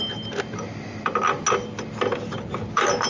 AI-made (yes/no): no